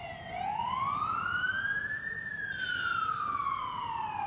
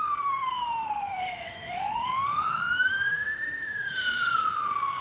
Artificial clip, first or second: second